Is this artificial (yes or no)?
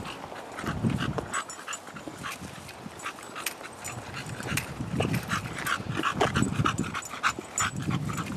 no